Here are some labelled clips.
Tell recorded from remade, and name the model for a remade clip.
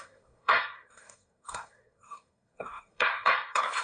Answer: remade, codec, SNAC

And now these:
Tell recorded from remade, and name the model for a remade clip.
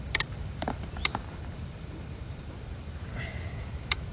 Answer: remade, vocoder, BigVGAN v2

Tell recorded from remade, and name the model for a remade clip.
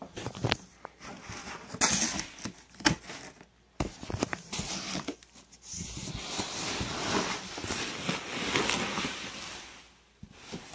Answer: recorded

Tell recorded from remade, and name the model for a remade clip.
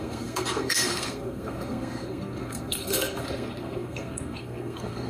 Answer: remade, codec, SNAC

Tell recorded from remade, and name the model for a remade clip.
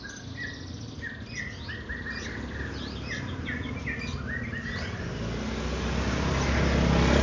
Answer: recorded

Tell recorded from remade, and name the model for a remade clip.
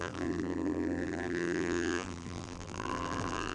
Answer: remade, vocoder, BigVGAN v2